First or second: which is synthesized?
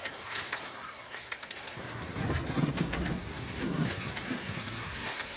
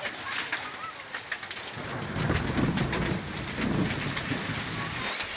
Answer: first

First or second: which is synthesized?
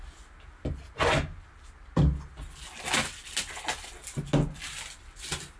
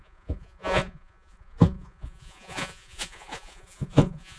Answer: second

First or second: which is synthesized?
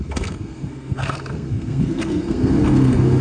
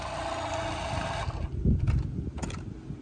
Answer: first